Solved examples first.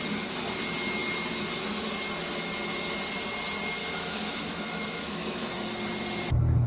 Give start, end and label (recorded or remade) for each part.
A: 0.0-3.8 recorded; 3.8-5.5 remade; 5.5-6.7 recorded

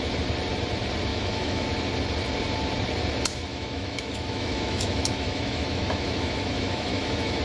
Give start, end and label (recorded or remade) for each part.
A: 0.0-1.1 recorded; 1.1-1.7 remade; 1.7-3.5 recorded; 3.5-7.4 remade

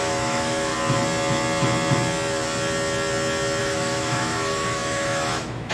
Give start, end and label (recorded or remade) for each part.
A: 0.0-0.7 remade; 0.7-3.6 recorded; 3.6-5.7 remade